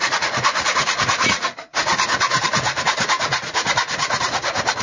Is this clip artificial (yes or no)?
yes